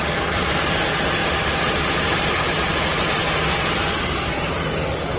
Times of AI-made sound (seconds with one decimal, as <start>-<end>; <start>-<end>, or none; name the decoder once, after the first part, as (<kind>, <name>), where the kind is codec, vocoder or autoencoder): 1.2-2.4 (vocoder, BigVGAN v2)